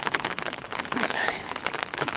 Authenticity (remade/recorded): remade